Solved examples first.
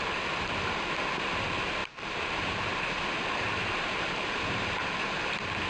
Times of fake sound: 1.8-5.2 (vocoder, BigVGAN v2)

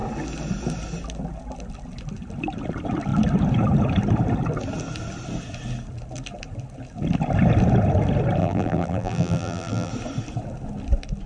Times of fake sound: 8.4-9.9 (vocoder, BigVGAN v2)

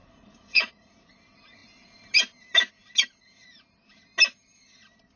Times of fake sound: 0.0-1.1 (vocoder, Vocos)

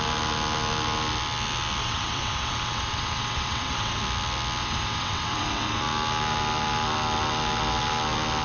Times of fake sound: 1.8-4.0 (vocoder, WaveNeXt); 4.6-5.8

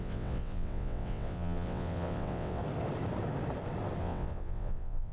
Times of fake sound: 0.0-2.6 (vocoder, WaveNeXt); 4.0-5.1